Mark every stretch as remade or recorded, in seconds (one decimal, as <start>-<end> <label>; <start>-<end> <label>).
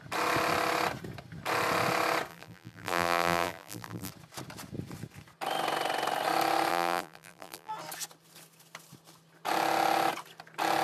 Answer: 0.0-2.3 recorded; 2.3-4.1 remade; 4.1-6.7 recorded; 6.7-7.7 remade; 7.7-10.8 recorded